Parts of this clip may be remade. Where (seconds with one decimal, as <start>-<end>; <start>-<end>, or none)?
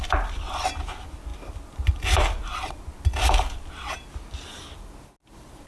none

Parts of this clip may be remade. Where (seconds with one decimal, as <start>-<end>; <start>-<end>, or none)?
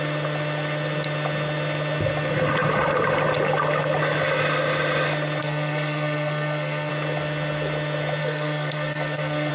5.4-6.9; 8.2-9.5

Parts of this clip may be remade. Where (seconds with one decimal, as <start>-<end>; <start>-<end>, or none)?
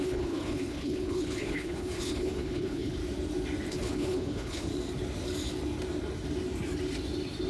0.0-3.0; 3.7-4.7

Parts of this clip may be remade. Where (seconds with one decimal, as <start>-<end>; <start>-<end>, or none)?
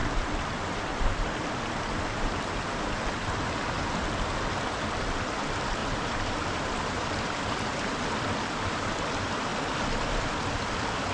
5.8-8.0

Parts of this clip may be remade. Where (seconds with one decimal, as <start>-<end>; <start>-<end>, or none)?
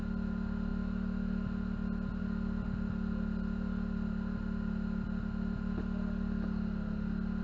none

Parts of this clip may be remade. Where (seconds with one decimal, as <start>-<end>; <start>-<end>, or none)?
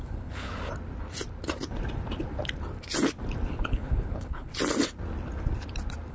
0.0-0.5; 3.5-4.5